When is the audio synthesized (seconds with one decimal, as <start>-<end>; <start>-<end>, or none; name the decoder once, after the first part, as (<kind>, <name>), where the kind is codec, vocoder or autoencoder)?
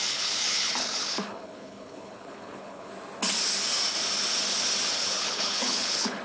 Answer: 0.0-2.9 (codec, HILCodec); 5.0-6.2